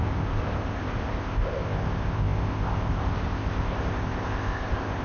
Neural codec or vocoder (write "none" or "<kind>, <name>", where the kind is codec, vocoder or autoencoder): codec, ZipCodec